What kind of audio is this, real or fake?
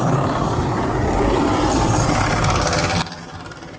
real